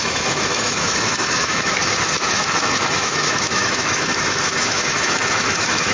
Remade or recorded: remade